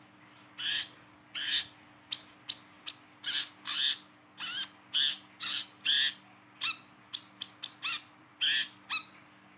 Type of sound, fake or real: real